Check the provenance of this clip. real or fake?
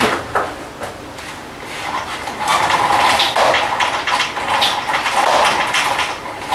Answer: real